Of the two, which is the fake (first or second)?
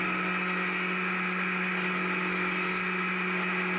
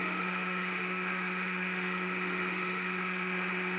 second